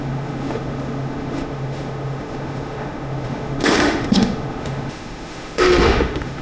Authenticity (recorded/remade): remade